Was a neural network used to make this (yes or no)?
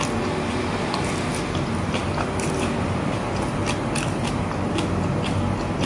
no